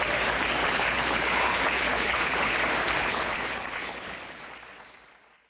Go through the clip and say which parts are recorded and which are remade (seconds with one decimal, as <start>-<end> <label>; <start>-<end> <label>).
0.0-0.6 recorded; 0.6-2.5 remade; 2.5-3.0 recorded; 3.0-4.4 remade; 4.4-5.5 recorded

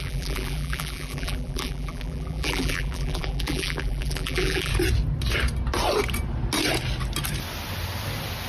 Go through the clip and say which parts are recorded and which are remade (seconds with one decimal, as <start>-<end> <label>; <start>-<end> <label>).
0.0-4.7 remade; 4.7-8.5 recorded

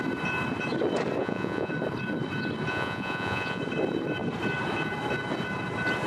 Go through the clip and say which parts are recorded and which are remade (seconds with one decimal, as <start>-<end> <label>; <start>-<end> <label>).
0.0-1.2 recorded; 1.2-1.7 remade; 1.7-2.7 recorded; 2.7-3.6 remade; 3.6-6.1 recorded

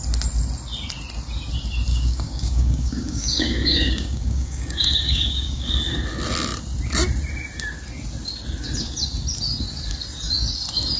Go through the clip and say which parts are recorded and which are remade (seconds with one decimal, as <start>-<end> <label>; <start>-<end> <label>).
0.0-1.9 recorded; 1.9-5.7 remade; 5.7-11.0 recorded

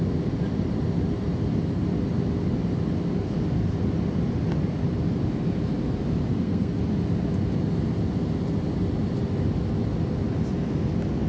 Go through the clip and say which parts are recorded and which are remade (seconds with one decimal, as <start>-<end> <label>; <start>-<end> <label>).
0.0-6.3 recorded; 6.3-6.8 remade; 6.8-11.3 recorded